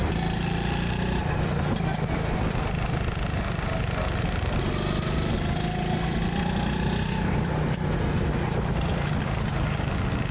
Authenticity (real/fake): real